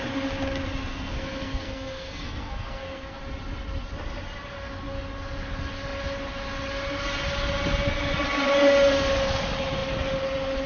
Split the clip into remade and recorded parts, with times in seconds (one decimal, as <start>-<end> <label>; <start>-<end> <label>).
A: 0.0-0.9 recorded; 0.9-3.2 remade; 3.2-10.7 recorded